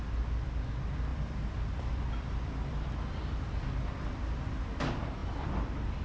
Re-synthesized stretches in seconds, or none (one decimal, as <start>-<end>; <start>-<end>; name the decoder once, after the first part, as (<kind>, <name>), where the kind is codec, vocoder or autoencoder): 1.1-4.7 (vocoder, BigVGAN v2); 5.2-6.0